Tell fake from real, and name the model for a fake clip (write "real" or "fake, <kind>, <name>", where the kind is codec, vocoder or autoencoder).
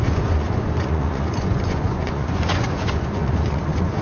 fake, vocoder, Vocos